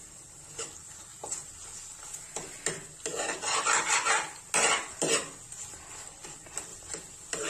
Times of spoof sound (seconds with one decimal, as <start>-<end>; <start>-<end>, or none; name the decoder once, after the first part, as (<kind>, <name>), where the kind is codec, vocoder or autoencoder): none